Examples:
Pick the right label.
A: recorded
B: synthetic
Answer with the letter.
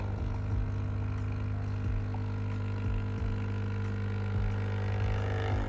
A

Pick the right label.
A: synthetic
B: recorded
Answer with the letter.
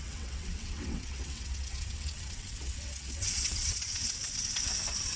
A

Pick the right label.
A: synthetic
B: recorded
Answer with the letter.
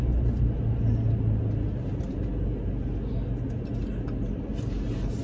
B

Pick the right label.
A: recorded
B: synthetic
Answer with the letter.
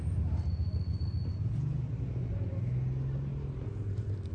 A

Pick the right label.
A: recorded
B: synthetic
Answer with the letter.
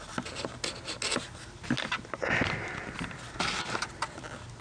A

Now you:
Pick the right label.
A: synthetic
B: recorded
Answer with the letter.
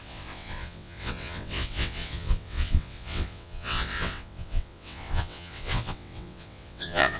A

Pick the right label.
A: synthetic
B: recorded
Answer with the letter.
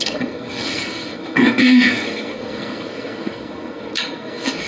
A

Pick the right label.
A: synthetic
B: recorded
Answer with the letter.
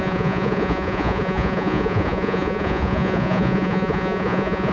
A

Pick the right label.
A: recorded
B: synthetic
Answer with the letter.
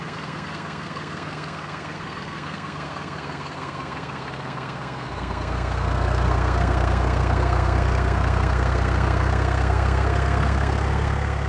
B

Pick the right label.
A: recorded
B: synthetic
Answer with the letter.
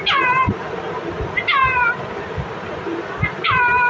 A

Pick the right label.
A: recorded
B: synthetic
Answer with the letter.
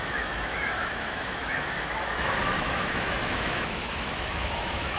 B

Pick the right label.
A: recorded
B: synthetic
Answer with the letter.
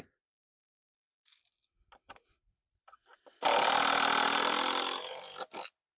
A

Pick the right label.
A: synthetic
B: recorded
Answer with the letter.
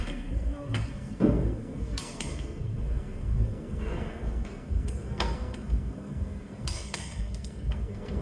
A